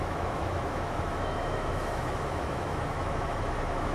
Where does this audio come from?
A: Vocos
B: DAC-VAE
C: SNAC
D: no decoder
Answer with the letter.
B